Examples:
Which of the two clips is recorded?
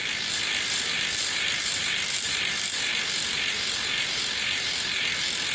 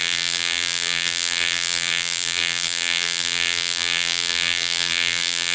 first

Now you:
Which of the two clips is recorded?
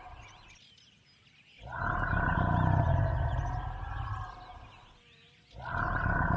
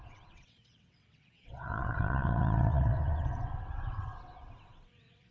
first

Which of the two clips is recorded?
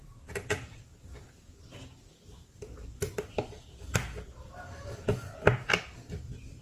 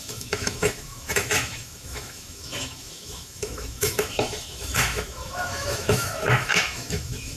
first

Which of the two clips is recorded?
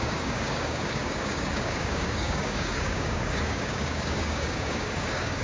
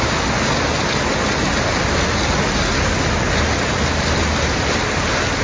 second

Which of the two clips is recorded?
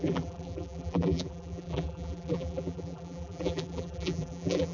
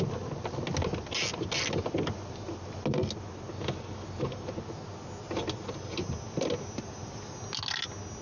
second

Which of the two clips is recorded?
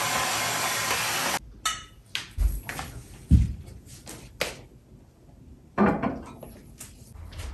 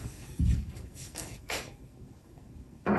first